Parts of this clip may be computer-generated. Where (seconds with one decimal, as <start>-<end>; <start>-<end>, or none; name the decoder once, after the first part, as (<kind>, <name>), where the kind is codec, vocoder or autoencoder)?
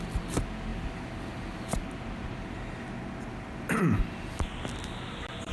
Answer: none